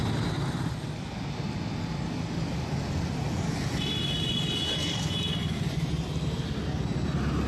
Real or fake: real